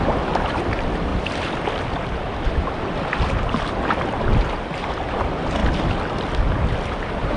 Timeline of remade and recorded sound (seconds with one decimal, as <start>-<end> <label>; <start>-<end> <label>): 0.0-7.4 recorded